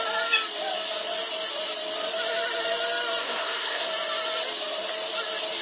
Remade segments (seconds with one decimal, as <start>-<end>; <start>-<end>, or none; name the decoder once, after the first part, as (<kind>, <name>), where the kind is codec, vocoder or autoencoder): 3.2-3.9 (codec, SNAC)